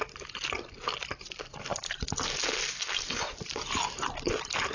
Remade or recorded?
recorded